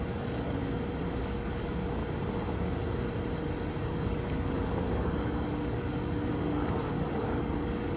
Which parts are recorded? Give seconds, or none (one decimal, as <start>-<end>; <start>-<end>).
0.6-1.1; 2.0-3.8